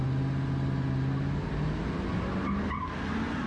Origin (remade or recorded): recorded